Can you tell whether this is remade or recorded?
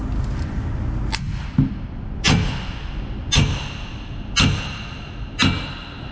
recorded